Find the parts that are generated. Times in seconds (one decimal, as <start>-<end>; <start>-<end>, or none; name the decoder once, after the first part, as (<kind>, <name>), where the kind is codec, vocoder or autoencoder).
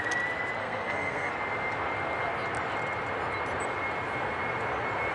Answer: 0.6-1.3 (codec, SNAC)